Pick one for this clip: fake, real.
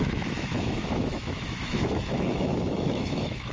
fake